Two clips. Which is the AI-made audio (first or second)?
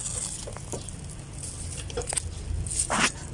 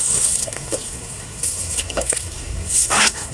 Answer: second